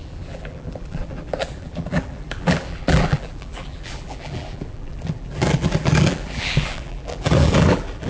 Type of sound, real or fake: fake